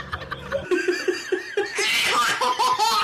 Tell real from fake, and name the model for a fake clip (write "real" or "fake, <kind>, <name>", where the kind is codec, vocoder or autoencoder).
fake, vocoder, BigVGAN v2